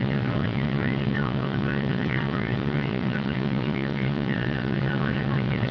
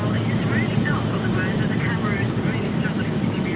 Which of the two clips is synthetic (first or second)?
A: first